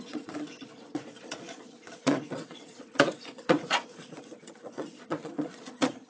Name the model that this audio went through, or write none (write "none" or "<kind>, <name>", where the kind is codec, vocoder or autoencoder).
vocoder, Vocos